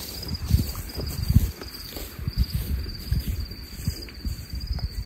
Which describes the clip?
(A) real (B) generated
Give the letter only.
B